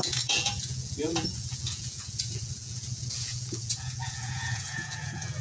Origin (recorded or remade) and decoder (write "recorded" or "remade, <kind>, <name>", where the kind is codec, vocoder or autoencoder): remade, vocoder, Vocos